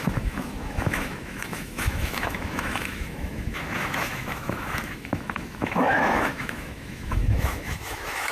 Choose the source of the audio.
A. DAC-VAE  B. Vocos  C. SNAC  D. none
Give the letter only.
A